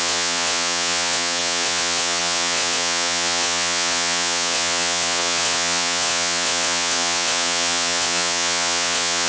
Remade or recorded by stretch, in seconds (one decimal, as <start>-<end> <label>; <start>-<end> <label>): 0.0-9.3 remade